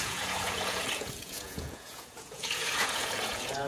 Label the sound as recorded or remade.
remade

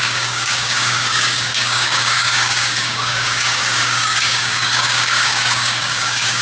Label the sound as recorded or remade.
remade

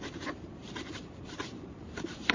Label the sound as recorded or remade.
remade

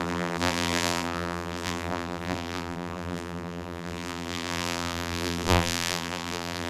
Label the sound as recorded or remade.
remade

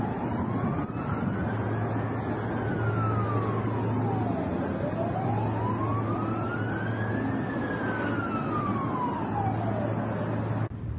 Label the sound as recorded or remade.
recorded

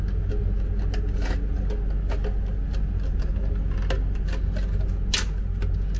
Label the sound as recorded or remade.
recorded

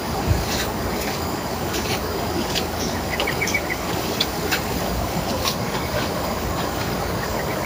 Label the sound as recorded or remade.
remade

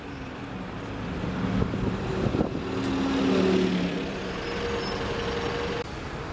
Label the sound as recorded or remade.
recorded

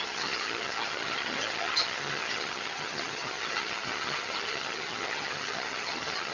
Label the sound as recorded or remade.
remade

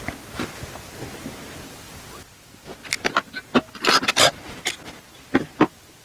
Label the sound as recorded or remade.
recorded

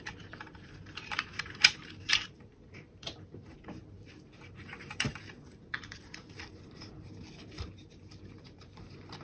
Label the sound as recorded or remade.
remade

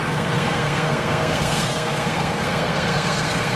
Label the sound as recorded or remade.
remade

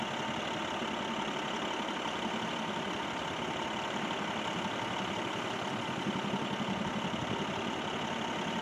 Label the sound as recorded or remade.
recorded